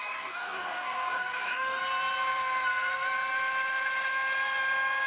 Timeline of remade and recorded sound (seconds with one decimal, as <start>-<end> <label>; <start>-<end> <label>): 0.0-1.8 remade; 1.8-5.1 recorded